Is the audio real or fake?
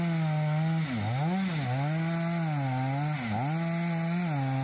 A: real